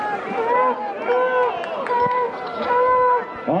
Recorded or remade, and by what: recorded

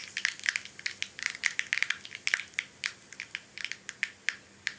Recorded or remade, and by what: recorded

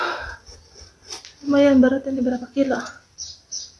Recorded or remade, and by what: recorded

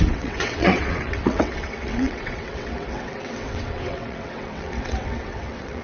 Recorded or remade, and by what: remade, vocoder, WaveNeXt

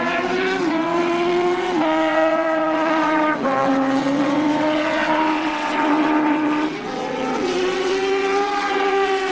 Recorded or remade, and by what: remade, vocoder, WaveNeXt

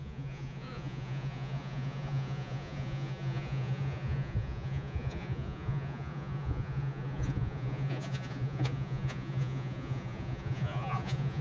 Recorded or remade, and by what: remade, vocoder, Vocos